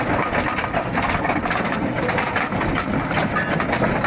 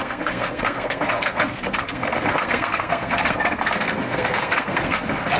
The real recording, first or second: first